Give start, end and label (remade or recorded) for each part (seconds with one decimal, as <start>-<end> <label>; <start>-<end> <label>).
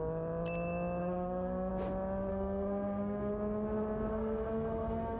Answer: 0.0-1.0 recorded; 1.0-1.7 remade; 1.7-2.3 recorded; 2.3-3.3 remade; 3.3-4.1 recorded; 4.1-5.2 remade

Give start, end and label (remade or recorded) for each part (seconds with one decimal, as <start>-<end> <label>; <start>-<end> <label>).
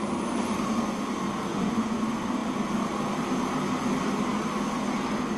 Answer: 0.0-1.5 recorded; 1.5-2.0 remade; 2.0-5.4 recorded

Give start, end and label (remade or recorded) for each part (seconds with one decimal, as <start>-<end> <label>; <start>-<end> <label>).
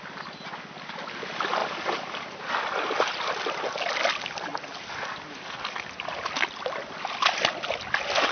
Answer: 0.0-8.3 recorded